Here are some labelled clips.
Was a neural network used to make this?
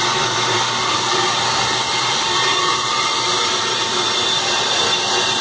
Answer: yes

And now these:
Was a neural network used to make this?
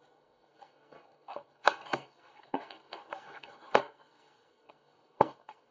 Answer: yes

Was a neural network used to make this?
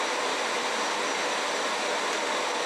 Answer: no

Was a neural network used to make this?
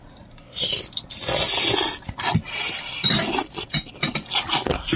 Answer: no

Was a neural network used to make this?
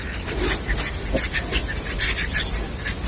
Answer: no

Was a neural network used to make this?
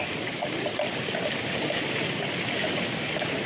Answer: no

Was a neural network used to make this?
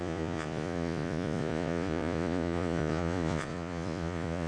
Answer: yes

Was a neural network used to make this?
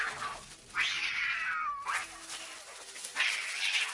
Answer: no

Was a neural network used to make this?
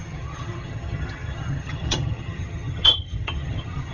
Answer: yes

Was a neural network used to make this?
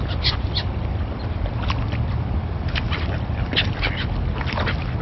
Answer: no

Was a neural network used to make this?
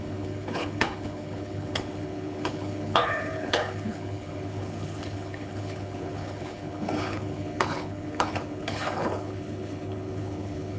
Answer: yes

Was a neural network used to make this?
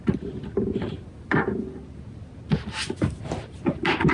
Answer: no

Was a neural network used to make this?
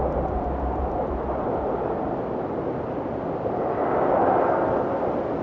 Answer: no